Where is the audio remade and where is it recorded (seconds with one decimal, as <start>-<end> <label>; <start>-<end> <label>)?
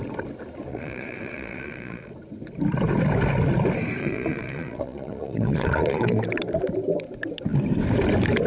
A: 0.0-0.7 recorded; 0.7-2.1 remade; 2.1-4.0 recorded; 4.0-6.2 remade; 6.2-8.5 recorded